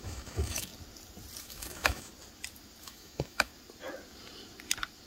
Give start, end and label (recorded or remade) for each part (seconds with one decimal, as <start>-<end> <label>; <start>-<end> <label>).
0.0-0.7 remade; 0.7-1.4 recorded; 1.4-2.1 remade; 2.1-2.8 recorded; 2.8-3.5 remade; 3.5-5.1 recorded